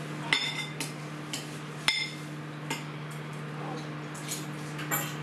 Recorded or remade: recorded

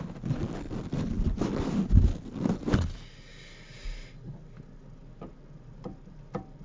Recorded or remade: recorded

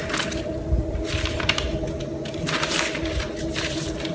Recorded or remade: recorded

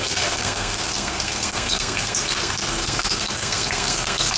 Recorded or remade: remade